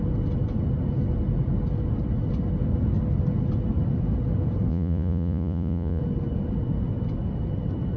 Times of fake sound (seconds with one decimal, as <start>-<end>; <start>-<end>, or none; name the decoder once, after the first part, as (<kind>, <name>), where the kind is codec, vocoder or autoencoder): 4.7-6.0 (vocoder, Vocos)